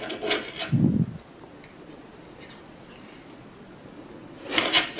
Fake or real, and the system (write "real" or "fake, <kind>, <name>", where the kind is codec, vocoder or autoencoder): real